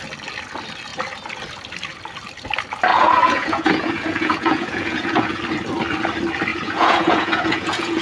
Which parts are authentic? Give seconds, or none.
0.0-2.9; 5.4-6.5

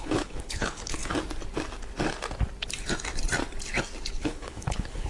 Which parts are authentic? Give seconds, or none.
1.0-4.1